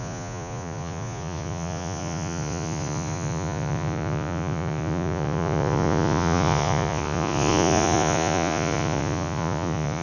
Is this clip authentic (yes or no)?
no